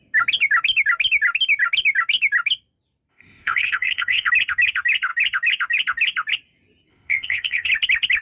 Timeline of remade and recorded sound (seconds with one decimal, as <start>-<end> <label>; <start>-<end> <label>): 0.0-3.1 recorded; 3.1-4.3 remade; 4.3-6.9 recorded; 6.9-7.7 remade; 7.7-8.2 recorded